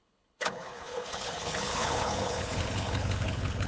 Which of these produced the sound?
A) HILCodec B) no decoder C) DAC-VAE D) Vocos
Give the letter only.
A